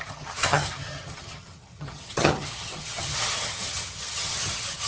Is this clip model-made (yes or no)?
yes